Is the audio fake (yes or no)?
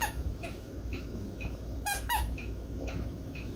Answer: yes